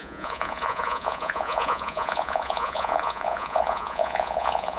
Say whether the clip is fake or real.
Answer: fake